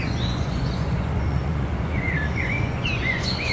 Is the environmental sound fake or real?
fake